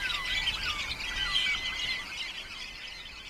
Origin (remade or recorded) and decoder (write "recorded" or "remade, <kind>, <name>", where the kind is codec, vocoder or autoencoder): recorded